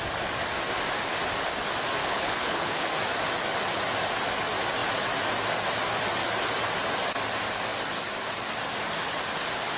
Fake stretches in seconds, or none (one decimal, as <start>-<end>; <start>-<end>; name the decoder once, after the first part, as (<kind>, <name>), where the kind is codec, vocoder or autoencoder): 2.0-2.9 (codec, HILCodec)